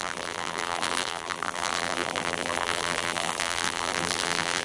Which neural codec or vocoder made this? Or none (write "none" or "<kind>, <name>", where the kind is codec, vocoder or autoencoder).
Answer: vocoder, BigVGAN v2